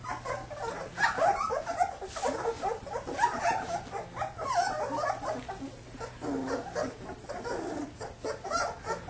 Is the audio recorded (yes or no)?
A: yes